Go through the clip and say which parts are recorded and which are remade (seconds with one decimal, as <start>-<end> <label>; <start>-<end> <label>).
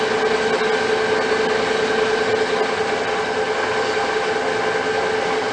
0.0-5.5 recorded